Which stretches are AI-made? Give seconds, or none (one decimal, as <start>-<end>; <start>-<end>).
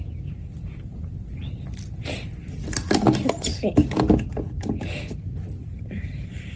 5.6-6.6